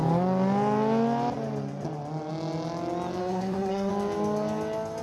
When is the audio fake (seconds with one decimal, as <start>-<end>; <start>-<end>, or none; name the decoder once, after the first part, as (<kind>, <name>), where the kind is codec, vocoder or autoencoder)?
3.2-3.9 (codec, SNAC)